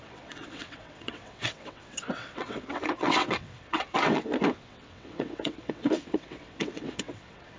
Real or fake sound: fake